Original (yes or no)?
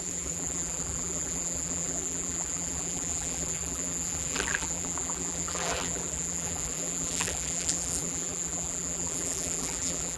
no